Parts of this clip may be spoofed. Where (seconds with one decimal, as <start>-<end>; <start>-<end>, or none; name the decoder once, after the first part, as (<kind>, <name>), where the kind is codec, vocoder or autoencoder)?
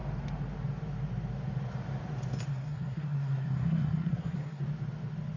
2.5-4.6 (codec, SNAC)